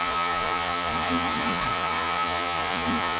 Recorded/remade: remade